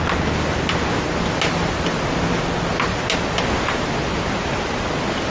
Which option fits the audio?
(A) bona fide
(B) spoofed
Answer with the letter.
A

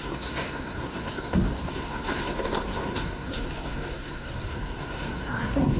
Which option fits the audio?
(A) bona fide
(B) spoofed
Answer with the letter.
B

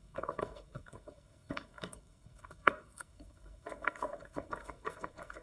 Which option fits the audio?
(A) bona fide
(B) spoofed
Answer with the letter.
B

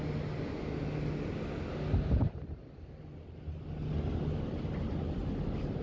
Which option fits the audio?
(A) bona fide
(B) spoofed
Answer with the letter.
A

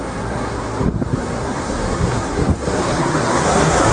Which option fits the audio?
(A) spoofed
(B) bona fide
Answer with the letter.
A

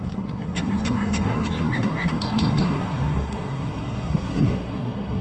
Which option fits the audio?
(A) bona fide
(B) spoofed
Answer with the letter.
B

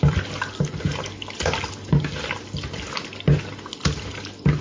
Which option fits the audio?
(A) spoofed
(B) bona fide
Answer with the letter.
B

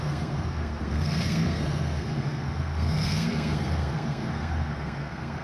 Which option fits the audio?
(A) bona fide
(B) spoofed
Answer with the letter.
B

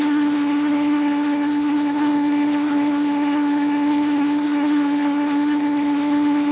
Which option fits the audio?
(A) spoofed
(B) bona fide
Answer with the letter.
A